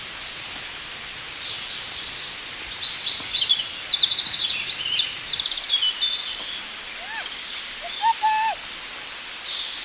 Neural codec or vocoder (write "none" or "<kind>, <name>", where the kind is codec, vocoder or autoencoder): none